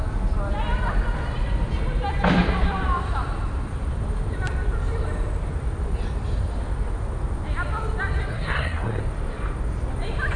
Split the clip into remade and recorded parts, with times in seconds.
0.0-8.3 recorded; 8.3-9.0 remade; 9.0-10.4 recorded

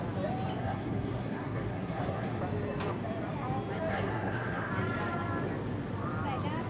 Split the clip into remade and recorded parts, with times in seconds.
0.0-0.6 recorded; 0.6-2.4 remade; 2.4-3.9 recorded; 3.9-4.7 remade; 4.7-6.7 recorded

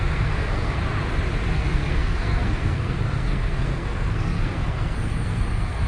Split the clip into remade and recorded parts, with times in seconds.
0.0-0.8 remade; 0.8-1.5 recorded; 1.5-5.9 remade

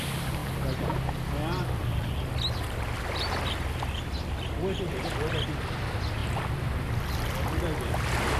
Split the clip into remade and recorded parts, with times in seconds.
0.0-8.4 recorded